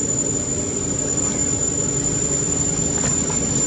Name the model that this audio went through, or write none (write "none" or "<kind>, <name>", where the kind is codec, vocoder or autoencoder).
none